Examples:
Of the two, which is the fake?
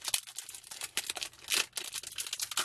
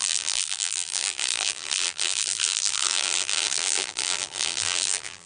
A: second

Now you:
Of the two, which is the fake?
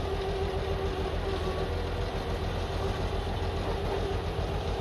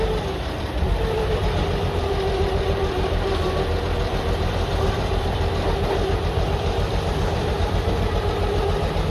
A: second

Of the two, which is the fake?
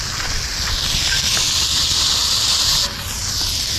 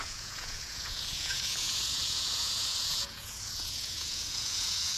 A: second